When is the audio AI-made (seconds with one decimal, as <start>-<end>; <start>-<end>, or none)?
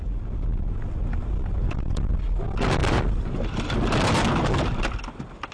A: 2.8-3.4